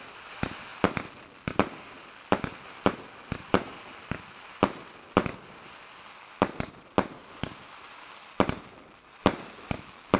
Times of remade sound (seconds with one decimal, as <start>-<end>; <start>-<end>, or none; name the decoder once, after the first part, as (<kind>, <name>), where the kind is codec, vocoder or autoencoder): none